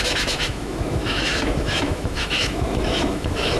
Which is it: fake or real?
fake